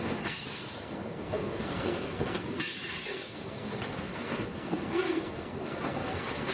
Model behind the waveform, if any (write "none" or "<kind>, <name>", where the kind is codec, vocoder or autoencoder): codec, SNAC